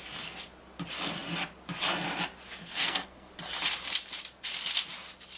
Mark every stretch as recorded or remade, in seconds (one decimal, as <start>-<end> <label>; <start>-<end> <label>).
0.0-2.6 recorded; 2.6-3.3 remade; 3.3-5.4 recorded